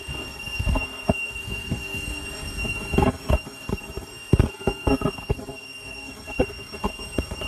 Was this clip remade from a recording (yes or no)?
yes